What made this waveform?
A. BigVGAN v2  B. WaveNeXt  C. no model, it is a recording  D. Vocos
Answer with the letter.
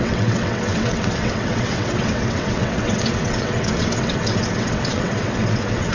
B